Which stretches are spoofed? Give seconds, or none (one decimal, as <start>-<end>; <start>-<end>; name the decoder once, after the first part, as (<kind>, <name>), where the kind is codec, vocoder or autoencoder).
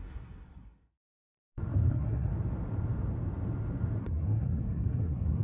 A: 0.0-1.4 (codec, SNAC); 1.9-2.3; 4.0-5.4